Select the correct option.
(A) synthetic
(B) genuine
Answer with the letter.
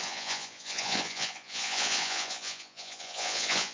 A